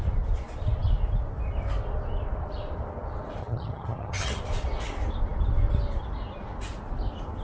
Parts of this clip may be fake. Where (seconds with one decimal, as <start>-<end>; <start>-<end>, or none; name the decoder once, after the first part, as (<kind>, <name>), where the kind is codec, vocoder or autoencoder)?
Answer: 3.4-4.4 (vocoder, HiFi-GAN)